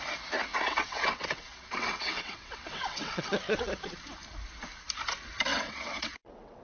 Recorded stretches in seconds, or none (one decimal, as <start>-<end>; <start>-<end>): 0.0-0.5; 3.7-5.5